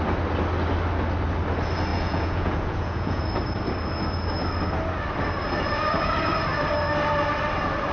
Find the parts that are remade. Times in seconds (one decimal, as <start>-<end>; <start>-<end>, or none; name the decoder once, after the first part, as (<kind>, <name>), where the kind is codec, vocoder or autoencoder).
1.9-3.2 (vocoder, Vocos)

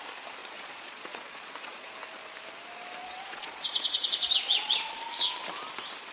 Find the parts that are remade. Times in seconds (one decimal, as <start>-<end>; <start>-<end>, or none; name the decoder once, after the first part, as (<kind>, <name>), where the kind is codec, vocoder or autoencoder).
0.4-1.9 (vocoder, Vocos); 3.0-4.9

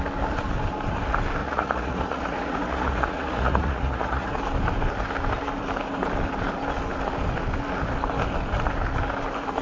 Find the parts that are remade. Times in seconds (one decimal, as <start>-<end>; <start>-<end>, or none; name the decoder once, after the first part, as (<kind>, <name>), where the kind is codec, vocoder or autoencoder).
1.4-4.3 (vocoder, Vocos)

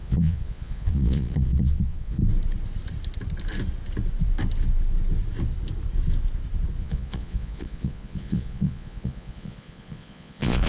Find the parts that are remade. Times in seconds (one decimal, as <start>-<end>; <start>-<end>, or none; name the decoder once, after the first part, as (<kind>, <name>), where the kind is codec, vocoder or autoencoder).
0.0-2.2 (vocoder, Vocos); 6.8-10.7

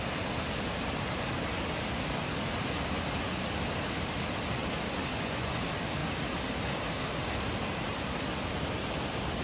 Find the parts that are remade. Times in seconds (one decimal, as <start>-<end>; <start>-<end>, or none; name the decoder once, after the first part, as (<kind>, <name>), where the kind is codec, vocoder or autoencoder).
5.1-5.6 (vocoder, Vocos)